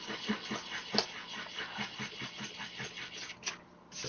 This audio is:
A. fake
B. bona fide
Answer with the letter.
B